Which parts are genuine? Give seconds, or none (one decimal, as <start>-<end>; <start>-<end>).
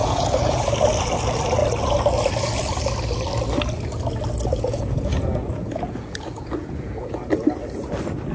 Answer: 0.6-4.5; 7.3-8.3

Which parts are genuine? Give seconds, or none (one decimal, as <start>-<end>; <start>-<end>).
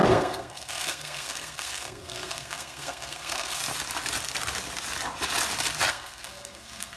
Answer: 3.6-5.9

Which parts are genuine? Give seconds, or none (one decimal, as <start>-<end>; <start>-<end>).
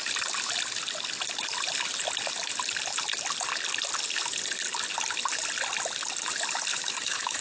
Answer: 0.0-6.7